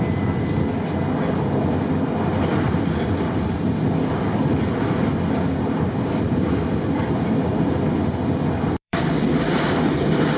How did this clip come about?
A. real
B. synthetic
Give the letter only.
B